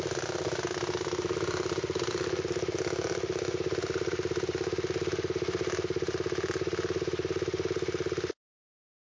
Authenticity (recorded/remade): recorded